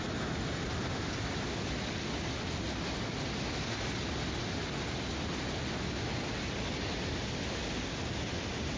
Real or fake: real